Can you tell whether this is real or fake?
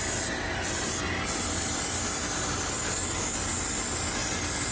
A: real